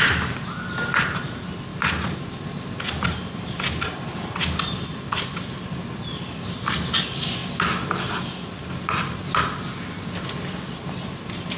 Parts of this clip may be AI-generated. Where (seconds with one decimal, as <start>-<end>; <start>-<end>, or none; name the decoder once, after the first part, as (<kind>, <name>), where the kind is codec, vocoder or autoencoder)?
none